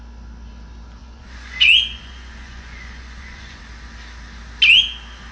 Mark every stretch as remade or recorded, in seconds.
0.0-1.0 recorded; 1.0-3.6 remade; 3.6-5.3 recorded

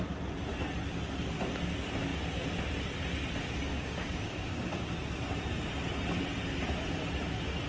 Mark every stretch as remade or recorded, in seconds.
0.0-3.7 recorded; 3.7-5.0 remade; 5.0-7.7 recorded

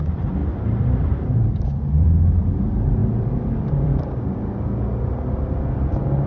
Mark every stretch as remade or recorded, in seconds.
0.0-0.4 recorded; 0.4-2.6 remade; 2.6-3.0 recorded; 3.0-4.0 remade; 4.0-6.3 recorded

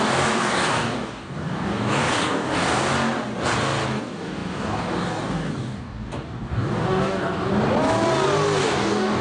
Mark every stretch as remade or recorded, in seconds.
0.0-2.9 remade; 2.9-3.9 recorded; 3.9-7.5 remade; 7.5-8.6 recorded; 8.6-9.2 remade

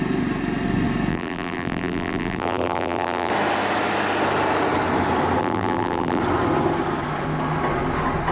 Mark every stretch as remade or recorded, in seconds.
0.0-1.1 recorded; 1.1-3.3 remade; 3.3-5.4 recorded; 5.4-6.2 remade; 6.2-8.3 recorded

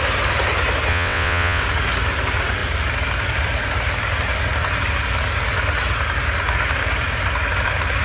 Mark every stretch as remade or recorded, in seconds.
0.0-0.9 recorded; 0.9-1.6 remade; 1.6-8.0 recorded